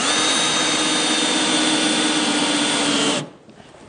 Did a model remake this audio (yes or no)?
no